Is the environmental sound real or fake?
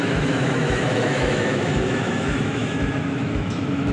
fake